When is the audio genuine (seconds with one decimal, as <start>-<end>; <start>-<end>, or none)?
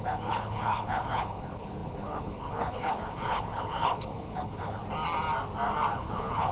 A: 4.8-5.9